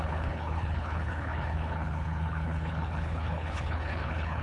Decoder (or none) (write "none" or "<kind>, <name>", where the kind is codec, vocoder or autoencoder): codec, HILCodec